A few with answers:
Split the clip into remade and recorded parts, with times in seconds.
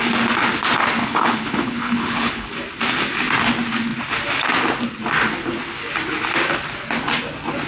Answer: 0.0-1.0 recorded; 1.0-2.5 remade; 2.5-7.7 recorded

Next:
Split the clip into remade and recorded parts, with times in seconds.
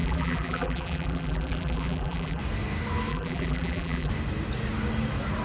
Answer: 0.0-2.4 remade; 2.4-3.1 recorded; 3.1-4.1 remade; 4.1-5.4 recorded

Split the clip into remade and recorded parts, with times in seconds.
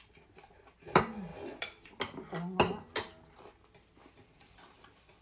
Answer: 0.0-5.2 recorded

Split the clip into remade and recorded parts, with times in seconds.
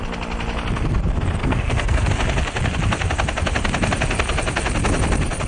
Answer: 0.0-1.4 recorded; 1.4-2.1 remade; 2.1-5.5 recorded